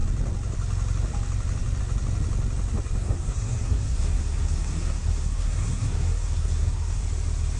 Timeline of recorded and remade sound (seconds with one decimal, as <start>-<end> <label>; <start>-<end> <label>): 0.0-3.0 recorded; 3.0-7.0 remade; 7.0-7.6 recorded